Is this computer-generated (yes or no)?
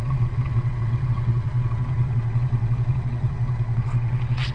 yes